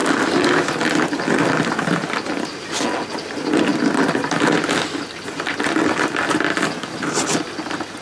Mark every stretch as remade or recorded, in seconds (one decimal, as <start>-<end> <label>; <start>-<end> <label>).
0.0-8.0 recorded